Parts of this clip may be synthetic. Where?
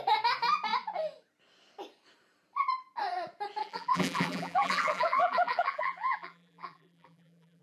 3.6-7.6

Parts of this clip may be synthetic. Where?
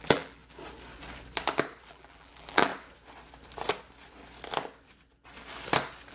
0.0-0.4; 1.9-2.7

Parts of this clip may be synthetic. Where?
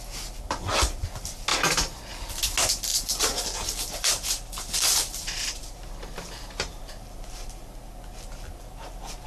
1.5-2.1; 2.9-6.5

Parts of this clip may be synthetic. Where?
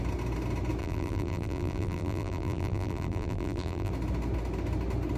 0.8-3.9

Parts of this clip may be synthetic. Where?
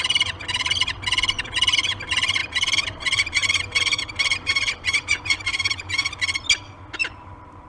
2.4-6.1; 7.0-7.7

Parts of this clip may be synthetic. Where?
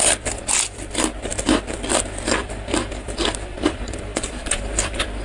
0.0-5.2